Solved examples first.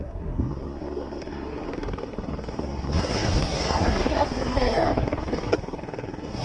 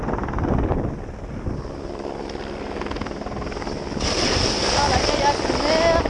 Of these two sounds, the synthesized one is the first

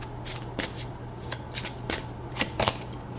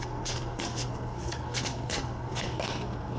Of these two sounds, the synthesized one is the second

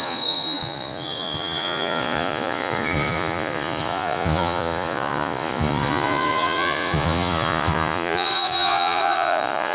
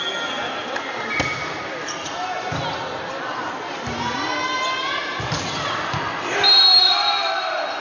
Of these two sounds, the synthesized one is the first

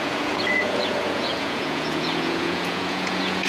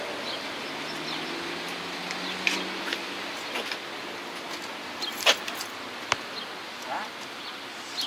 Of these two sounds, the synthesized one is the first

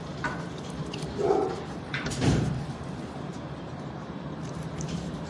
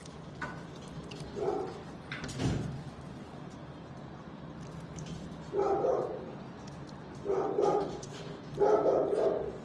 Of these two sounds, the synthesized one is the first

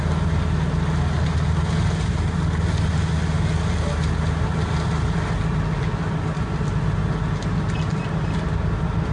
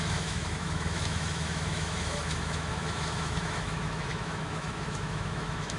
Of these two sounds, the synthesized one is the second